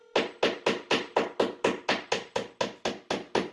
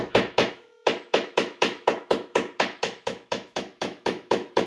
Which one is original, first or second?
first